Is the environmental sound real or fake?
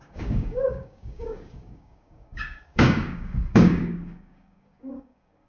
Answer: fake